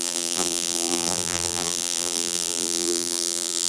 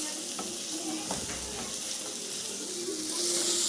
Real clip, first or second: second